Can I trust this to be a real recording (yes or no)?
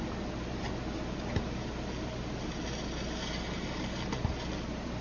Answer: yes